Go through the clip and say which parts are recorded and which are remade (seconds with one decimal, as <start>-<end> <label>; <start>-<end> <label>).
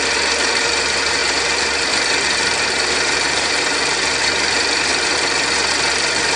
0.0-6.4 remade